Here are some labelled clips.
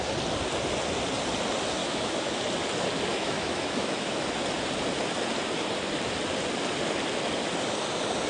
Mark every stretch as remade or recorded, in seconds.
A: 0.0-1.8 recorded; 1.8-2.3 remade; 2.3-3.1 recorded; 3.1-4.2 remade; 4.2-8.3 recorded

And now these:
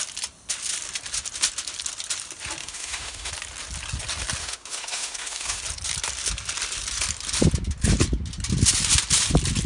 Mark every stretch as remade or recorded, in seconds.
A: 0.0-2.6 recorded; 2.6-3.3 remade; 3.3-4.4 recorded; 4.4-5.6 remade; 5.6-9.7 recorded

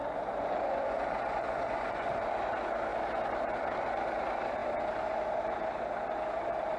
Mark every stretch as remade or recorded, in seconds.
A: 0.0-2.3 remade; 2.3-6.8 recorded

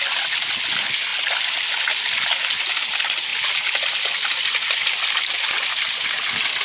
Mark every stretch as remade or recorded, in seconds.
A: 0.0-6.6 recorded

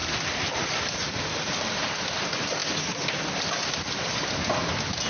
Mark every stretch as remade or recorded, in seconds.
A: 0.0-5.1 recorded

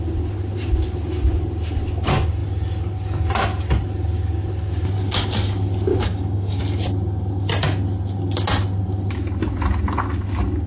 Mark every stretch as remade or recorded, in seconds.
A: 0.0-5.9 recorded; 5.9-6.6 remade; 6.6-10.7 recorded

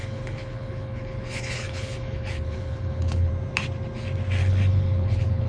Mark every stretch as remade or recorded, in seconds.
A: 0.0-3.3 remade; 3.3-4.4 recorded; 4.4-5.5 remade

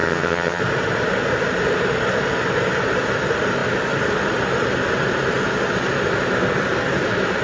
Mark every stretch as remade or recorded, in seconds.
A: 0.0-0.6 remade; 0.6-7.4 recorded